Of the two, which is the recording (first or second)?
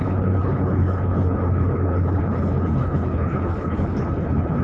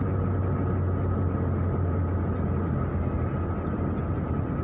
second